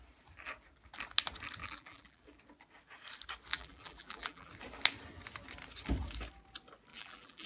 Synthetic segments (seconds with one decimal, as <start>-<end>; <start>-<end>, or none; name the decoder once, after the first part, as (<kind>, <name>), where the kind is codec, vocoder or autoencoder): 1.6-2.2 (vocoder, BigVGAN v2); 3.5-4.5; 6.9-7.5